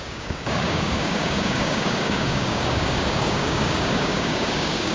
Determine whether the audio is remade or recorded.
remade